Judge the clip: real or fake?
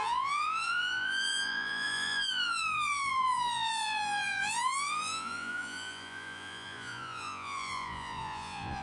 fake